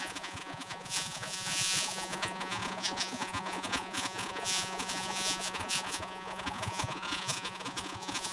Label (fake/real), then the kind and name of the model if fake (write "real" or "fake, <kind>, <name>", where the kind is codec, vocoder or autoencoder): fake, vocoder, Vocos